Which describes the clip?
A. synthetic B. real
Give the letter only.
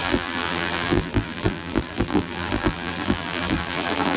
A